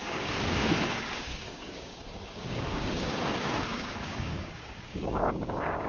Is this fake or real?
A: fake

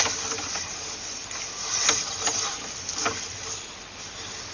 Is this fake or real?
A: real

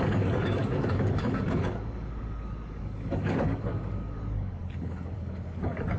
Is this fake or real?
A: fake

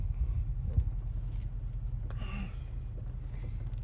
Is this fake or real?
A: real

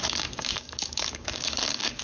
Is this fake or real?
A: fake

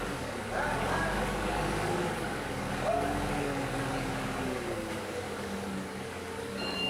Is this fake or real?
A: fake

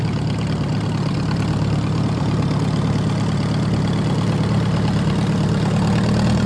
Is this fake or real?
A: real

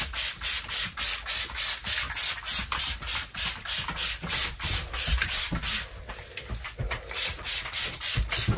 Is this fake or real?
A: real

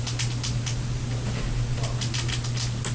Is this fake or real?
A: real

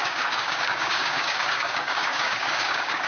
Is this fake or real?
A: fake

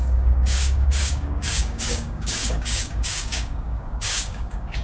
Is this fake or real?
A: fake